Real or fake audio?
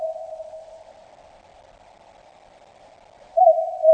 real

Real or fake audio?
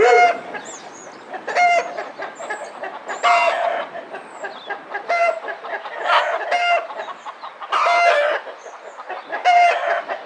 real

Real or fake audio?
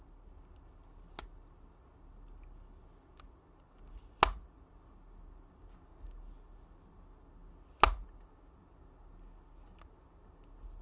real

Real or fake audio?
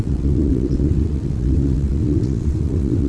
fake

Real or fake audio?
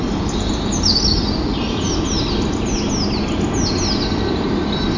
real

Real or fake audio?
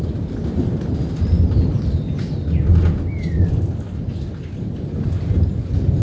real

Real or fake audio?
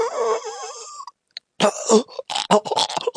real